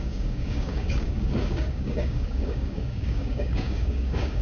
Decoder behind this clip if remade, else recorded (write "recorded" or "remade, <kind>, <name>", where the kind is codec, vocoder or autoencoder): remade, codec, DAC